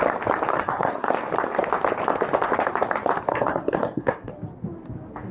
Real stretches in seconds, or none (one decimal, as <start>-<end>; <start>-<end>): 0.0-0.5; 1.1-3.3; 4.3-5.3